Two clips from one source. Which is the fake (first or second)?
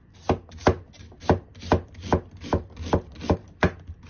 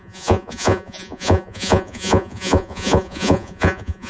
second